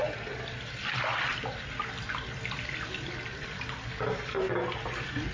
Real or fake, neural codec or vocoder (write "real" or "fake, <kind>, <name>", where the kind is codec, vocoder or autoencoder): real